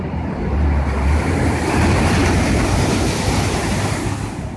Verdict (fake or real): real